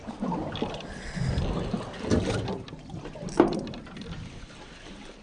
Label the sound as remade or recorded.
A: recorded